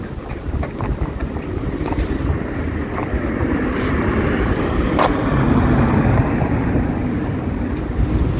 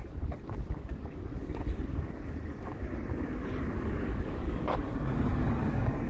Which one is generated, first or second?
second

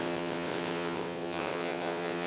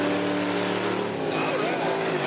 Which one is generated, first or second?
first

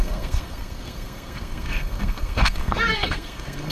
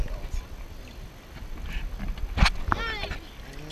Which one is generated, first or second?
first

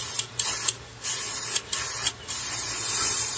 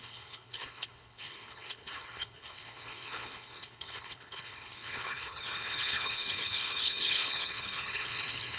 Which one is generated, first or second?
second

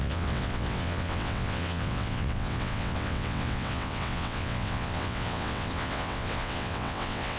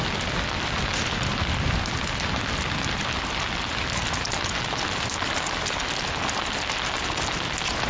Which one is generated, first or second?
first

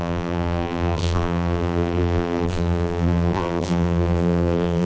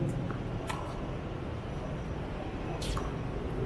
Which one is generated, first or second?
first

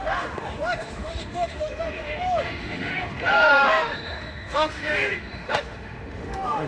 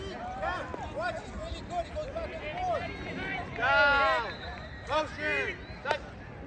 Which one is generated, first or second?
first